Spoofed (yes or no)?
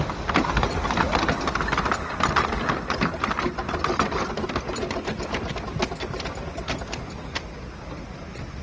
no